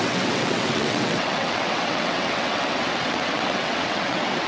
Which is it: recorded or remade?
remade